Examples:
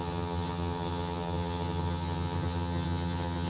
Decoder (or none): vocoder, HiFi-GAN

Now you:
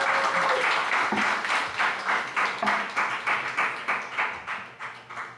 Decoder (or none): none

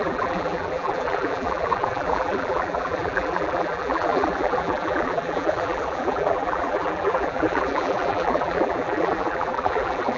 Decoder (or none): vocoder, BigVGAN v2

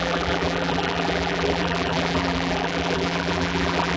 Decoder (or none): vocoder, BigVGAN v2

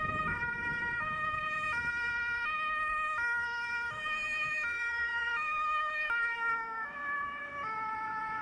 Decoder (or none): autoencoder, DAC-VAE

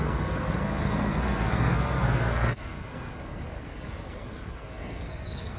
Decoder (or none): codec, SNAC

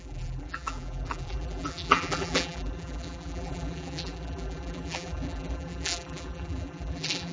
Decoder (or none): vocoder, BigVGAN v2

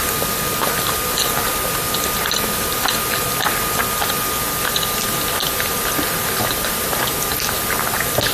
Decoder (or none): none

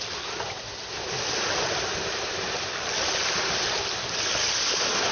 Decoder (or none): none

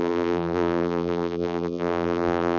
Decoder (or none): vocoder, BigVGAN v2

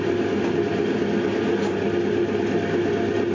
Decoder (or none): none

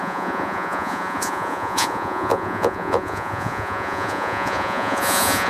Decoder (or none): vocoder, Vocos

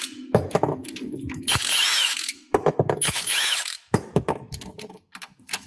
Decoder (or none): autoencoder, DAC-VAE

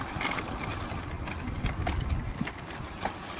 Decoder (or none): none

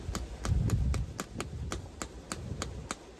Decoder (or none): none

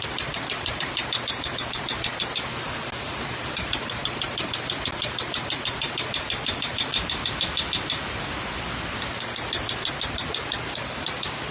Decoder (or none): none